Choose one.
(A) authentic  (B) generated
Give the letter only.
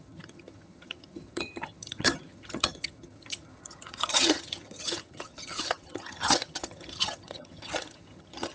B